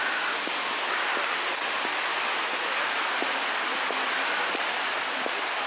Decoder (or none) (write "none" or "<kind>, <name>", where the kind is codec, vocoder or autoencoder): none